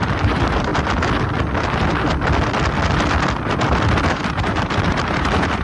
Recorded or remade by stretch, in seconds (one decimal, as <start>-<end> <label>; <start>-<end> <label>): 0.0-0.7 remade; 0.7-4.1 recorded; 4.1-5.6 remade

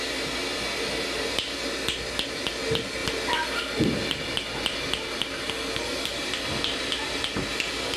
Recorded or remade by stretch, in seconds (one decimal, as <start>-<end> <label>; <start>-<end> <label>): 0.0-8.0 recorded

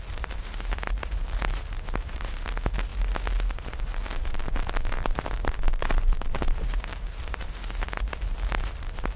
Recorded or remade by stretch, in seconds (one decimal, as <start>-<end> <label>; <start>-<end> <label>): 0.0-2.9 remade; 2.9-3.5 recorded; 3.5-3.9 remade; 3.9-4.9 recorded; 4.9-9.2 remade